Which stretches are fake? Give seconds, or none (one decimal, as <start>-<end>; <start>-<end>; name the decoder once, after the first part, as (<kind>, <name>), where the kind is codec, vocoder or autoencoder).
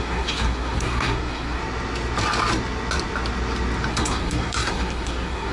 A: 0.0-1.6 (codec, SNAC); 3.9-5.5